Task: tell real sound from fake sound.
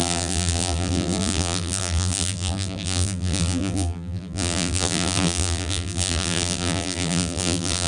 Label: fake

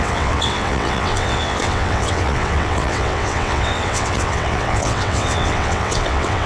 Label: fake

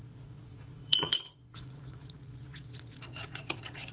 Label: fake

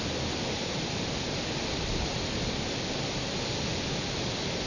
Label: real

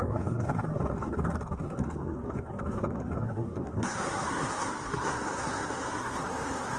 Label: fake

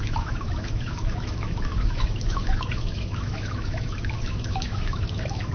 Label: fake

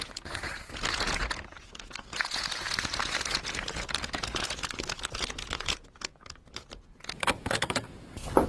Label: fake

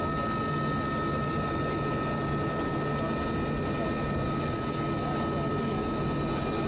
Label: real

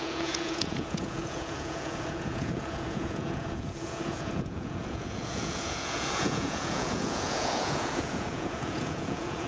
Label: fake